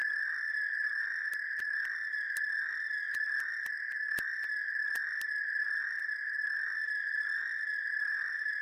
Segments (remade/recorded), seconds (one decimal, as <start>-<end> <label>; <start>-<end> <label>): 0.0-5.4 remade; 5.4-7.7 recorded; 7.7-8.6 remade